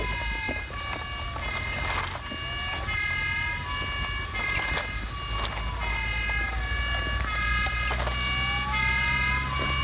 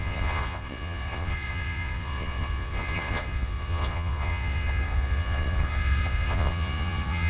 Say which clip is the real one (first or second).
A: first